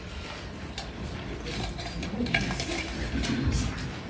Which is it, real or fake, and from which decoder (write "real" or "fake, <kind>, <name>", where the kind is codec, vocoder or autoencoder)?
real